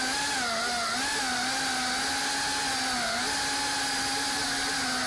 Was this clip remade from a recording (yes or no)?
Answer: no